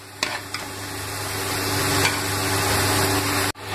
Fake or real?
real